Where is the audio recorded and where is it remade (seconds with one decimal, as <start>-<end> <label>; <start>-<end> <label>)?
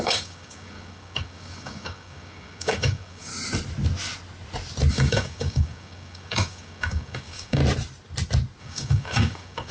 0.0-3.3 remade; 3.3-4.9 recorded; 4.9-7.6 remade; 7.6-8.6 recorded; 8.6-9.7 remade